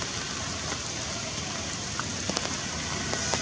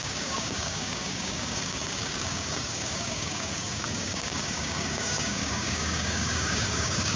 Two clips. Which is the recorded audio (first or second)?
first